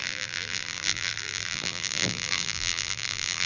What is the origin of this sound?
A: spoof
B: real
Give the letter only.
A